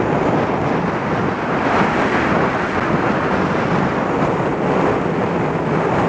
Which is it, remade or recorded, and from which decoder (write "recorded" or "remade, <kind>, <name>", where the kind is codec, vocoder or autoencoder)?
recorded